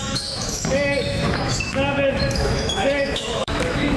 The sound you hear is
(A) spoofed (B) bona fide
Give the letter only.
A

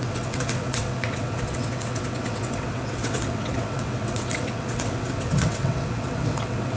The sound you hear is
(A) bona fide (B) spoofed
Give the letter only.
B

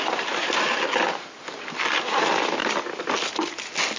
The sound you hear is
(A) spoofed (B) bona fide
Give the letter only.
B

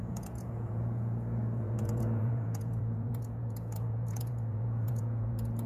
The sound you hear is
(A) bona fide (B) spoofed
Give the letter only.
B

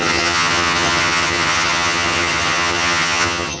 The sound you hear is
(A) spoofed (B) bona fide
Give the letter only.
A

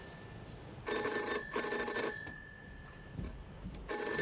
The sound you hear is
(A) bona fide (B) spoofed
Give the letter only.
A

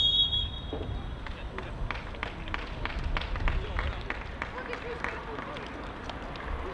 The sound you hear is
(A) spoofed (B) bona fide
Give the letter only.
B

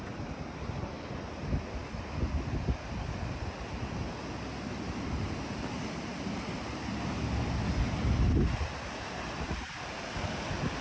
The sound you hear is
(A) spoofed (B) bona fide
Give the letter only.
B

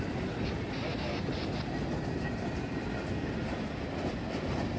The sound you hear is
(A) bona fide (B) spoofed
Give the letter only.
A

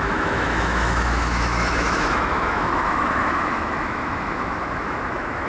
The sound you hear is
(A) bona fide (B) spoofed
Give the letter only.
B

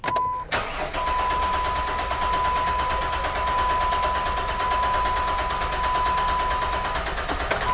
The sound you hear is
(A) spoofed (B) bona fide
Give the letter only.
B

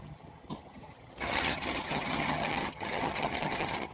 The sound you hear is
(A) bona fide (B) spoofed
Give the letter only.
B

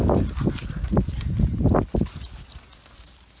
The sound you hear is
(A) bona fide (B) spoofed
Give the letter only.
A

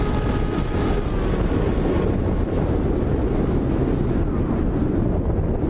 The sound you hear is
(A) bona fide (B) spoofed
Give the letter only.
A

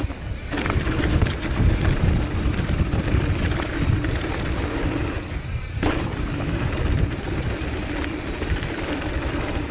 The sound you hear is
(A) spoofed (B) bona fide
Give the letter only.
B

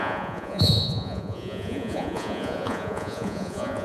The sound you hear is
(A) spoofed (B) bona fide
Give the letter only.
A